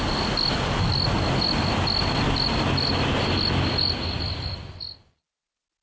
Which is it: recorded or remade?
recorded